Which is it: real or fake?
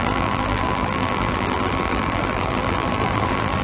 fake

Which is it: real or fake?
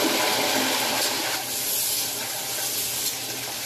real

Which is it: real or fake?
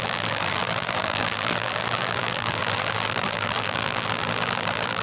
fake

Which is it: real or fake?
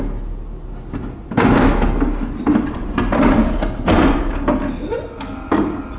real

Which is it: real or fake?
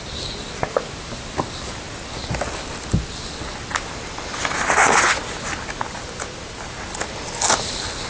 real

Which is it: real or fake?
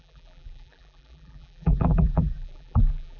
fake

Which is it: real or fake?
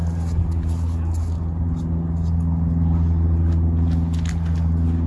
real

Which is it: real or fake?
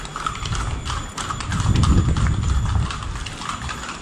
real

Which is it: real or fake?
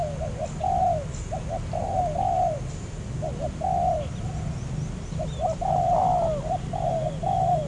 real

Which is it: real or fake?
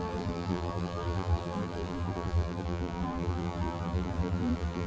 fake